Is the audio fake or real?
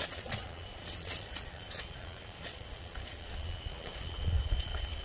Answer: fake